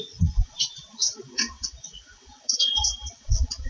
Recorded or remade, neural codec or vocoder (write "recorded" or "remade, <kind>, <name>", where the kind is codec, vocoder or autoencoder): remade, vocoder, WaveNeXt